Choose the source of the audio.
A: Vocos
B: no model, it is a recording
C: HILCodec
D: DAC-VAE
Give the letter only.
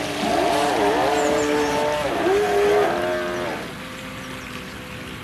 B